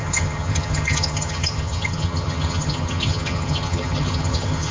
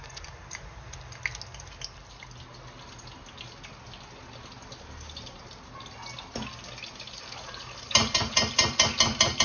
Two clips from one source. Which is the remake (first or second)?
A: first